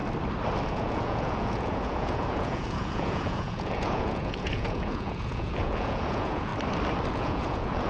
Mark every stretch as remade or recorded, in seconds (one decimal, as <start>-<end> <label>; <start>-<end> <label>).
0.0-0.7 recorded; 0.7-6.5 remade; 6.5-7.1 recorded; 7.1-7.9 remade